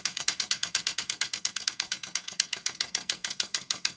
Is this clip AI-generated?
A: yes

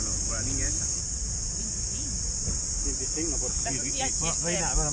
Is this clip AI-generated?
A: no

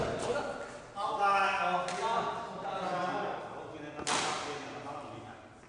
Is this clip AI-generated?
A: no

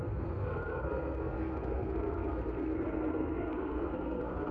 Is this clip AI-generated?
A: yes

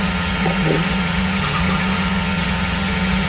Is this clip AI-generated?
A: yes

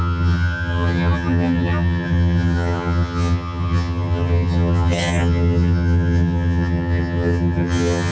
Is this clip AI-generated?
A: yes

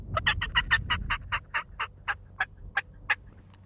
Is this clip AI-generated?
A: no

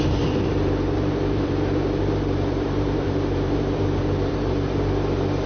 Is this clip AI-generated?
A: yes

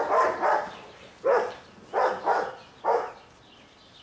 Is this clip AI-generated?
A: no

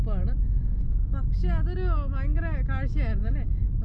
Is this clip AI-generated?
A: no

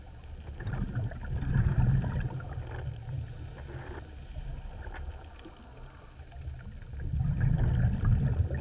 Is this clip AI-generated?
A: no